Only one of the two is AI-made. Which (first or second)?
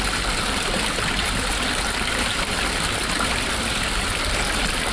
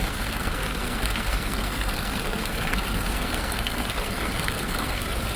second